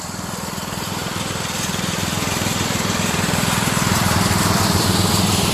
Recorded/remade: remade